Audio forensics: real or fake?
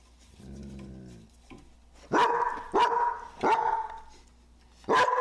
real